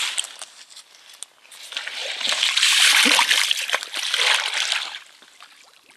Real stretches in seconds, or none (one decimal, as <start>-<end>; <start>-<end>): 0.0-6.0